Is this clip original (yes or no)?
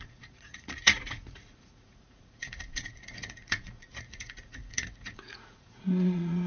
no